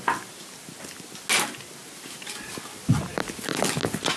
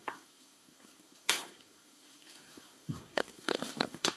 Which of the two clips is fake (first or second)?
second